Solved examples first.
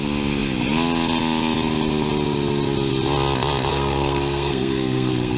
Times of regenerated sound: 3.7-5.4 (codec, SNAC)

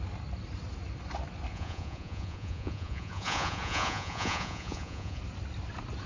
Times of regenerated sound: 1.5-5.2 (vocoder, Vocos)

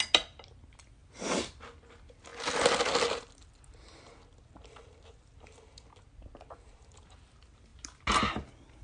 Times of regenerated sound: none

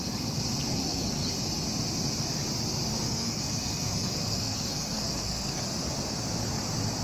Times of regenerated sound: 0.7-1.3 (codec, SNAC); 2.9-5.6

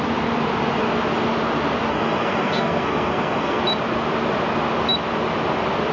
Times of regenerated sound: 1.9-3.6 (codec, SNAC)

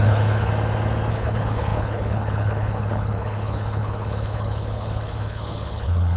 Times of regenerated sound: 0.0-0.5 (codec, HILCodec); 1.1-6.2

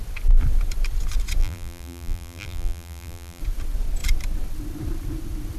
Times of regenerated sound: 1.4-3.4 (vocoder, BigVGAN v2)

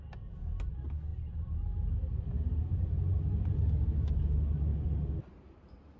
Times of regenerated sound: none